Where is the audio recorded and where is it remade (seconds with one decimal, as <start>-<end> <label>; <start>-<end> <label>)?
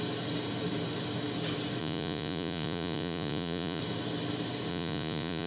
0.0-1.8 recorded; 1.8-3.8 remade; 3.8-4.7 recorded; 4.7-5.5 remade